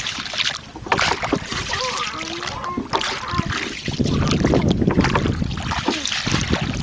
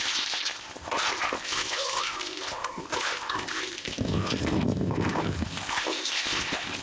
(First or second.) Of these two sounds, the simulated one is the second